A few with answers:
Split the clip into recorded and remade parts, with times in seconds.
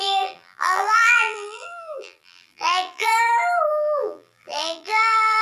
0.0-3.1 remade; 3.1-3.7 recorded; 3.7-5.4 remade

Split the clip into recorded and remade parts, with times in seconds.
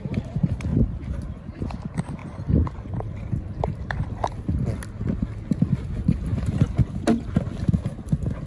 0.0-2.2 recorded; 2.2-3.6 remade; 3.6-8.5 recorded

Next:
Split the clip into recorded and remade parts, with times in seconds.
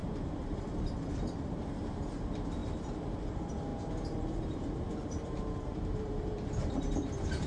0.0-7.5 remade